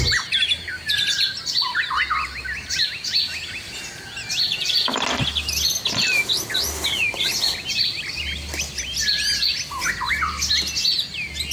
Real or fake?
real